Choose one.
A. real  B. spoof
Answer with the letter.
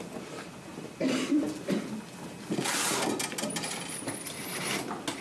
A